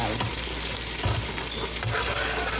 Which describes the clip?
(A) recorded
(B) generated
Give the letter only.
A